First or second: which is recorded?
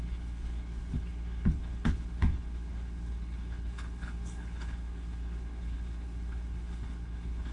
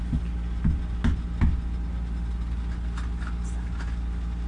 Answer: second